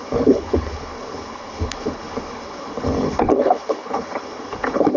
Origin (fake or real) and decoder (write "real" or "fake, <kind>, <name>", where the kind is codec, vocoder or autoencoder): fake, codec, HILCodec